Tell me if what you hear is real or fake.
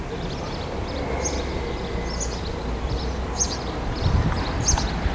real